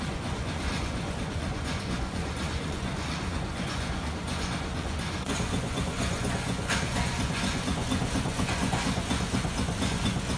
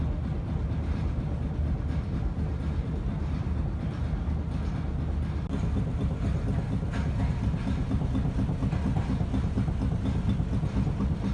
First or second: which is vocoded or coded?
first